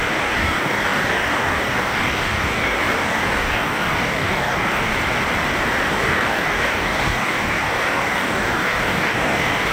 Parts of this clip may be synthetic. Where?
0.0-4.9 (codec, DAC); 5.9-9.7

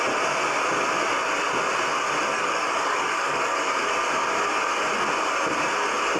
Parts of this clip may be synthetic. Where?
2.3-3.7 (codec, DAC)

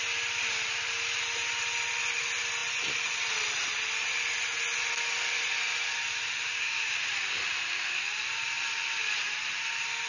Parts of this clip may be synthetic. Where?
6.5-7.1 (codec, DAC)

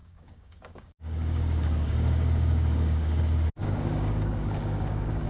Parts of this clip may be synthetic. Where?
0.0-3.2 (codec, DAC); 3.6-5.3

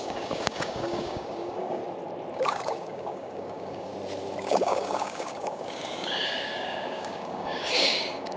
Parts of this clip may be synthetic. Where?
0.0-1.8 (codec, DAC); 2.3-3.9; 4.4-8.4

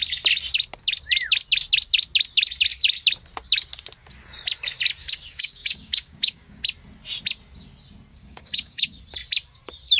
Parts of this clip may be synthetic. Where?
5.0-6.6 (codec, DAC); 8.1-9.0

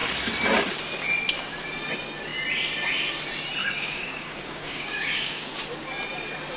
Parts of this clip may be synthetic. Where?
3.6-5.5 (codec, DAC)